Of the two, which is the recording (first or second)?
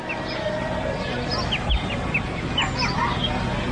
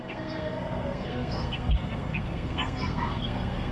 first